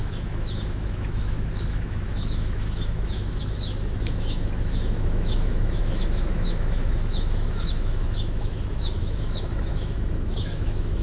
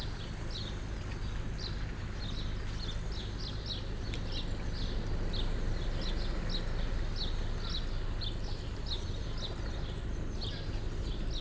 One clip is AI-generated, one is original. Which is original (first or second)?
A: second